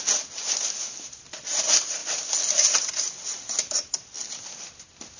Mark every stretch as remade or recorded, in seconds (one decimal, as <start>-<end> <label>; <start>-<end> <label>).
0.0-5.2 recorded